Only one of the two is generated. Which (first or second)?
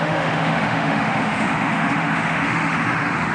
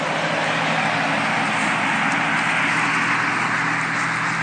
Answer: first